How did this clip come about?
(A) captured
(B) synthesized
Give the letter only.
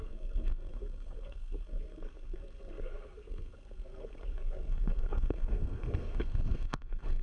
B